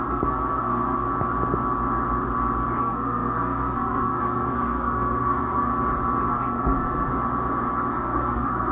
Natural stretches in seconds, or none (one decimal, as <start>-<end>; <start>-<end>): 1.1-2.8; 5.7-6.3; 7.1-7.9